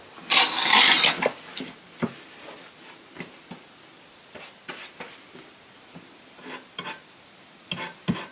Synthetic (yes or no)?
no